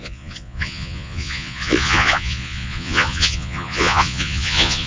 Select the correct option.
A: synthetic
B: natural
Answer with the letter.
A